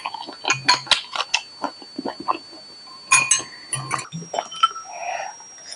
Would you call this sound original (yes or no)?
yes